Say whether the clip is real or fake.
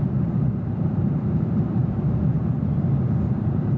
fake